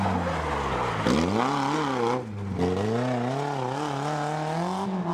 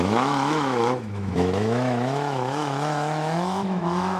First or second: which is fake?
second